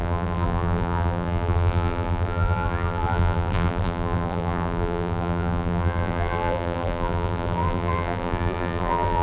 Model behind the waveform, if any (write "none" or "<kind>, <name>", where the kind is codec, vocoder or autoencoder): vocoder, BigVGAN v2